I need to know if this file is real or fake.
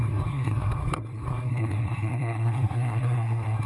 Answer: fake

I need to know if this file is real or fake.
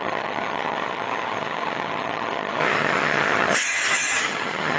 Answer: fake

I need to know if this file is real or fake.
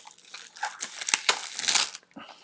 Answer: real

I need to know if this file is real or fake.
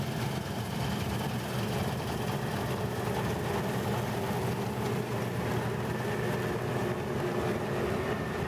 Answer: real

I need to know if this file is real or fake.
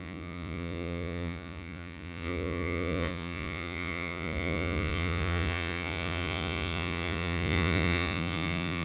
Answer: fake